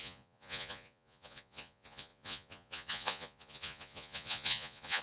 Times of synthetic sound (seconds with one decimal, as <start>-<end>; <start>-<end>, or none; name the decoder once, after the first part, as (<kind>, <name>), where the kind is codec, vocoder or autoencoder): 0.0-5.0 (vocoder, Vocos)

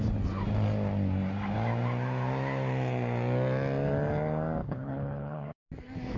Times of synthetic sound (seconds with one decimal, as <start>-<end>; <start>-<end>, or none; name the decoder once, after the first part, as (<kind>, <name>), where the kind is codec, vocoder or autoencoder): 4.6-5.6 (codec, HILCodec)